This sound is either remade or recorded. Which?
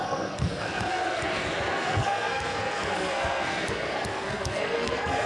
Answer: remade